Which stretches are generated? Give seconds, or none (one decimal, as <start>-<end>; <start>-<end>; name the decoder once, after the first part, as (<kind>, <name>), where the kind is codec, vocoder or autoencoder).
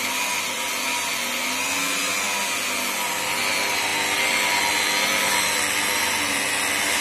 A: none